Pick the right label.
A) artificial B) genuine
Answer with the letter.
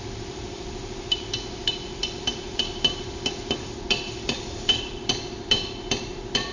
A